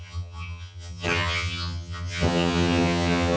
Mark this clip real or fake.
fake